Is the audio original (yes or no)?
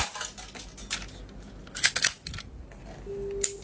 yes